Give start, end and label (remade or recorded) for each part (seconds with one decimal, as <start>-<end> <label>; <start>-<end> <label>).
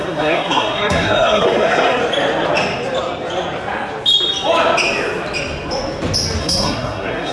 0.0-2.0 remade; 2.0-6.4 recorded; 6.4-7.3 remade